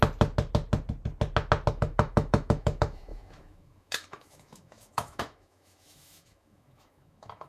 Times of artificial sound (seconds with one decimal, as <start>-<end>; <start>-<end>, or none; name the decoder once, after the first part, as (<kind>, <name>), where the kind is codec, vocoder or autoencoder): 1.7-7.5 (autoencoder, DAC-VAE)